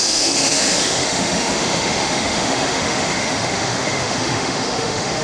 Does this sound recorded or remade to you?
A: remade